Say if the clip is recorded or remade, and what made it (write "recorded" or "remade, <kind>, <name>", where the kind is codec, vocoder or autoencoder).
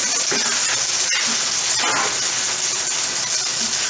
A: recorded